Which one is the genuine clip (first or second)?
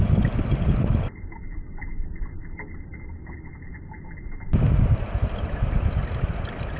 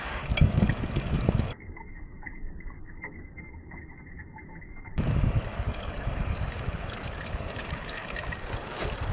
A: first